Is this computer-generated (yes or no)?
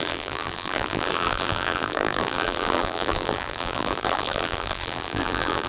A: yes